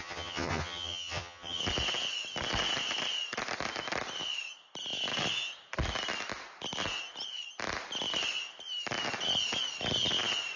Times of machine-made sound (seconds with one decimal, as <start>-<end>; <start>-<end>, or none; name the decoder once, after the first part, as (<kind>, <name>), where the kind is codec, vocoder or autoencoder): 0.0-1.6 (vocoder, HiFi-GAN)